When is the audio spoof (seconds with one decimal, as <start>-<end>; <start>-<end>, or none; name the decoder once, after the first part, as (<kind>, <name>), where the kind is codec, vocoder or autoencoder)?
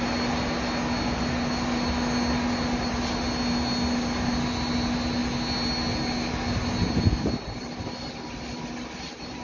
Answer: none